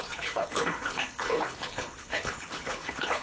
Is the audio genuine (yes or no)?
no